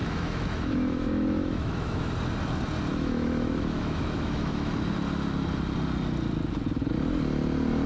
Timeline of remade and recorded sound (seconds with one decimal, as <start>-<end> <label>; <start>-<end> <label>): 0.0-2.1 remade; 2.1-2.9 recorded; 2.9-4.7 remade; 4.7-7.9 recorded